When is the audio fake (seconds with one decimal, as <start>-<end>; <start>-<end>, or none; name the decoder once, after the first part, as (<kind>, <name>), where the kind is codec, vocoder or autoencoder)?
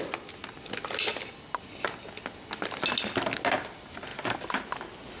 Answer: none